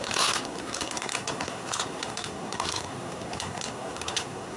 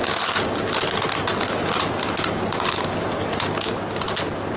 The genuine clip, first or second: second